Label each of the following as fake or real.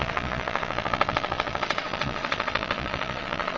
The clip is fake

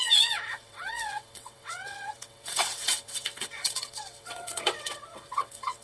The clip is fake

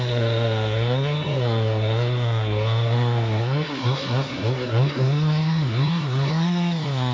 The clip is fake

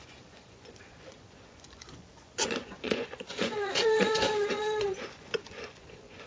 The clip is fake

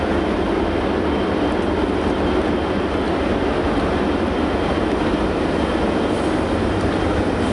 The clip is real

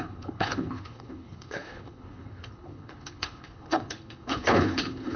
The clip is fake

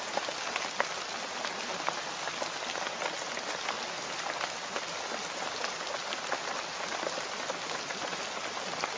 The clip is real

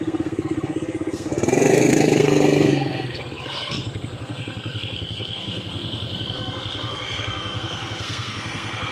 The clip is fake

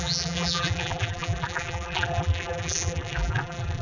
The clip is fake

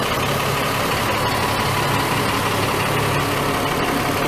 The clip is real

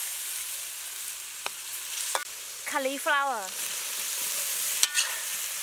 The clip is real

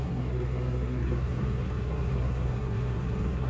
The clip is fake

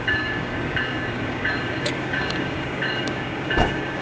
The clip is fake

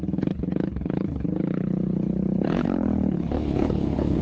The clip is fake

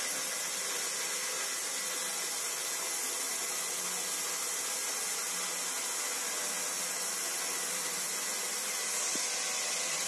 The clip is real